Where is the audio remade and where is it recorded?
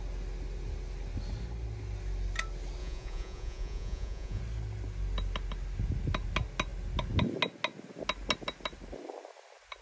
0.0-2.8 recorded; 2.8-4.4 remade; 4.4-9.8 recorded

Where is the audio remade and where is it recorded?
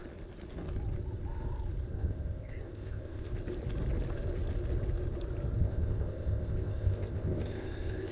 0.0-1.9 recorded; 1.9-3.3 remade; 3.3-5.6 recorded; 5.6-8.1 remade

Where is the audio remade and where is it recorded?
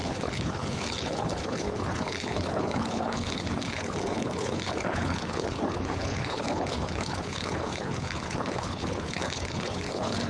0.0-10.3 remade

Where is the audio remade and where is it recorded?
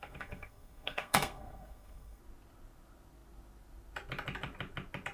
0.0-2.2 remade; 2.2-5.1 recorded